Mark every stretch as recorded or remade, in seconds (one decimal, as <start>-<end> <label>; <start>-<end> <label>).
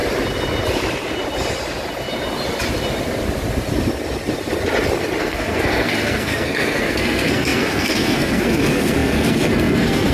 0.0-5.2 recorded; 5.2-10.1 remade